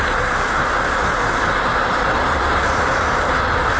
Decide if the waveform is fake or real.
real